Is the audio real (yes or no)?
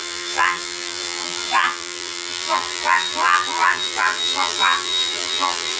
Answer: no